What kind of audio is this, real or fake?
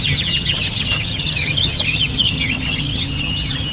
fake